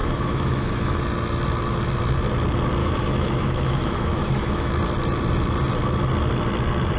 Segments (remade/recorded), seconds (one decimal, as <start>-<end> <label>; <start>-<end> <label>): 0.0-1.0 remade; 1.0-2.8 recorded; 2.8-4.7 remade; 4.7-7.0 recorded